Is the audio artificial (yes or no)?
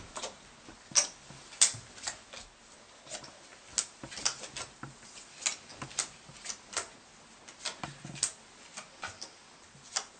no